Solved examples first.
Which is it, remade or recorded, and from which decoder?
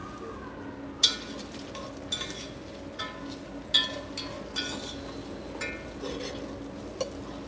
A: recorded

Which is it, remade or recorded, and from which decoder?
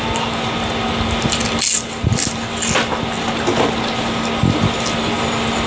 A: recorded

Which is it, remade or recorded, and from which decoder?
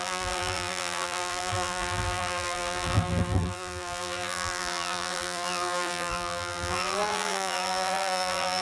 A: remade, vocoder, BigVGAN v2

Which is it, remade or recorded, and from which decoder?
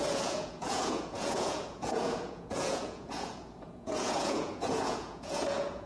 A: remade, vocoder, Vocos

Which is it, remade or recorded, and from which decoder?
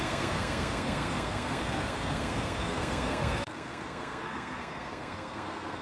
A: remade, codec, SNAC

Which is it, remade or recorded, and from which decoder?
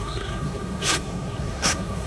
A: remade, codec, SNAC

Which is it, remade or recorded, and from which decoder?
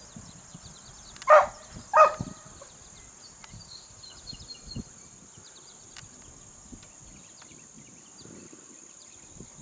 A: recorded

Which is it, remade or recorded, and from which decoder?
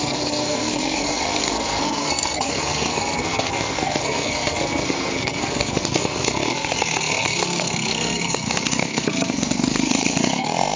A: remade, codec, SNAC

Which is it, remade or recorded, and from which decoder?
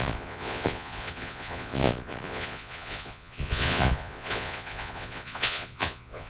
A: remade, vocoder, Vocos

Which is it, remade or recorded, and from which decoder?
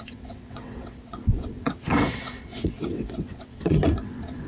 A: remade, vocoder, WaveNeXt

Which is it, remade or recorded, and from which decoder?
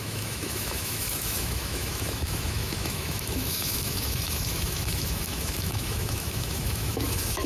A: remade, autoencoder, DAC-VAE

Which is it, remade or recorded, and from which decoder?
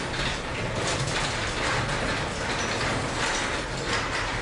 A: recorded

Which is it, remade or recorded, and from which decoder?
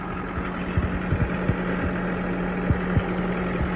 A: recorded